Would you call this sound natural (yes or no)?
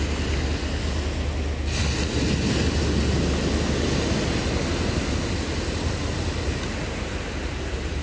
yes